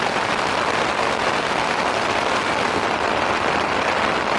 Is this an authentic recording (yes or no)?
no